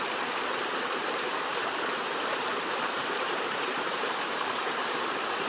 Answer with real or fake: fake